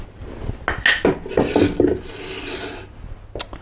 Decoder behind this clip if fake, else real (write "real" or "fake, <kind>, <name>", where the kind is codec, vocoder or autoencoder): real